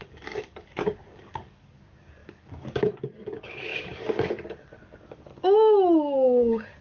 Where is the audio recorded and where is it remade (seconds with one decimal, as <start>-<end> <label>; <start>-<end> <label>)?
0.0-6.8 remade

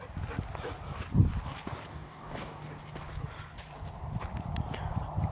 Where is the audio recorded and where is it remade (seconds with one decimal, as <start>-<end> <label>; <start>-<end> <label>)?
0.0-1.9 recorded; 1.9-2.7 remade; 2.7-5.3 recorded